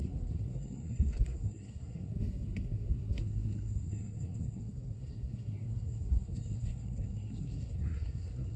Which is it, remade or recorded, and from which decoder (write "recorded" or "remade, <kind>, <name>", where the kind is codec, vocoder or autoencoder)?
remade, codec, SNAC